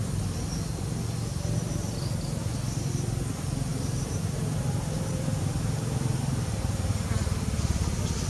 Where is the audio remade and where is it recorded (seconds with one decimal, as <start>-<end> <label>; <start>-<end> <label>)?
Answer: 0.0-3.7 recorded; 3.7-7.3 remade; 7.3-8.3 recorded